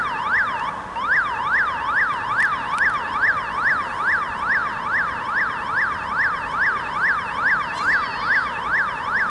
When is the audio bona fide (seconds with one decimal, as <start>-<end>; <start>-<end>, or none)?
0.0-9.3

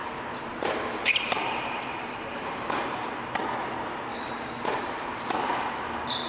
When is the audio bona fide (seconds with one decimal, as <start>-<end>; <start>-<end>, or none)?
3.3-4.1

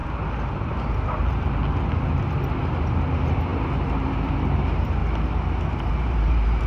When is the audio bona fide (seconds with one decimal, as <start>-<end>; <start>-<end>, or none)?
0.0-0.5; 1.6-2.6; 5.0-5.9

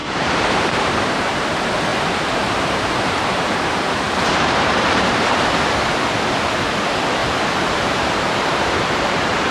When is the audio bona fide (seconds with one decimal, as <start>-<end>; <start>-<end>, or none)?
1.3-1.9; 5.5-7.2

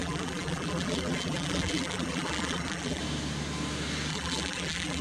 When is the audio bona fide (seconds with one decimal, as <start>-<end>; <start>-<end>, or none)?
3.0-4.1

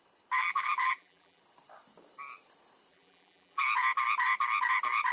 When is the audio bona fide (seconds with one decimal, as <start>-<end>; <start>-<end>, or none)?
0.0-0.4; 1.4-2.9; 3.6-5.1

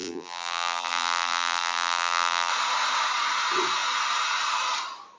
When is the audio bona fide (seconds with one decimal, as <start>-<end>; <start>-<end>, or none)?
2.5-5.2

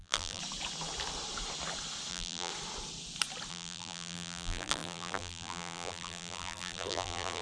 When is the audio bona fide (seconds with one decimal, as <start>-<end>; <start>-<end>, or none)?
0.4-2.1; 2.5-3.5